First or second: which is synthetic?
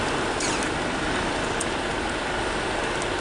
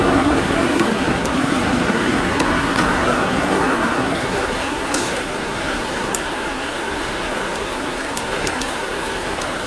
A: second